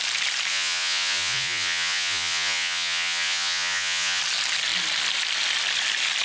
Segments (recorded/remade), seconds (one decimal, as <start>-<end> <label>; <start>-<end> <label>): 0.0-0.5 recorded; 0.5-4.2 remade; 4.2-6.2 recorded